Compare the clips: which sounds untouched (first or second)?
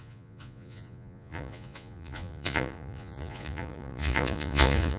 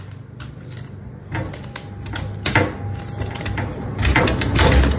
second